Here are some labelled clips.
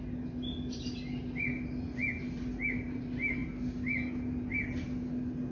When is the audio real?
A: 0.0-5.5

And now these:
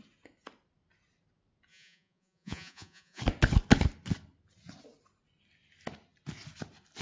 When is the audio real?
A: 0.0-1.7; 3.2-7.0

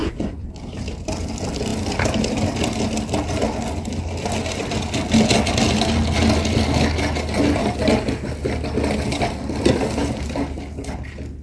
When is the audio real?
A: 0.5-11.4

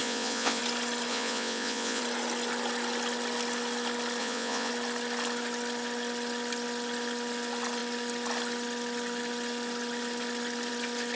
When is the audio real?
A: 0.6-1.1; 2.0-4.2; 4.7-11.1

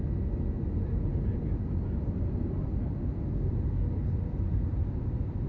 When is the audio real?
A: 0.0-5.5

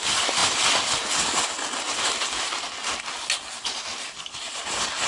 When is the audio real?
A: 0.0-5.1

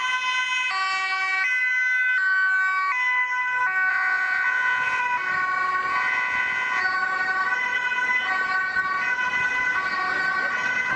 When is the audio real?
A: 0.0-3.9; 5.0-5.9; 6.8-11.0